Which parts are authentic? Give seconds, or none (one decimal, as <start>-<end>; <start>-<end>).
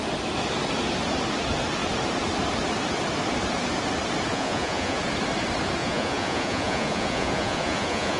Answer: 0.0-4.3; 5.0-5.8